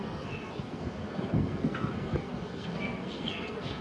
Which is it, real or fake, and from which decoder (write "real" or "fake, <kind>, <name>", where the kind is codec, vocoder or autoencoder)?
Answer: fake, codec, SNAC